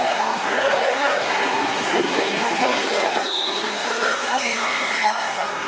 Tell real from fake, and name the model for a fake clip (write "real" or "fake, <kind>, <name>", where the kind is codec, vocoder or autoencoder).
fake, codec, SNAC